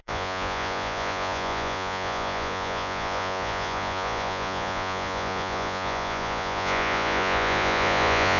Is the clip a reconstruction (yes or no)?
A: yes